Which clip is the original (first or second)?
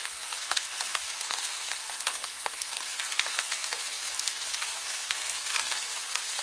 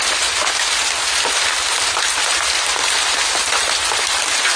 second